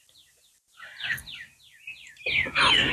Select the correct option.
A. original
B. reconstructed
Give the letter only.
A